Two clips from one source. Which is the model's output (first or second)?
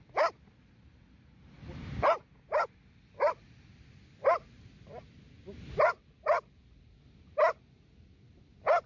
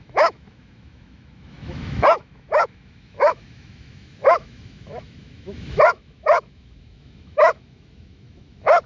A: second